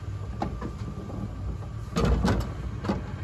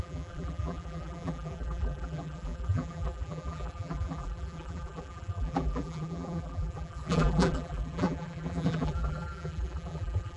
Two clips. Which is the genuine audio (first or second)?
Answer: first